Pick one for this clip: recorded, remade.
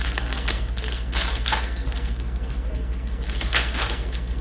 remade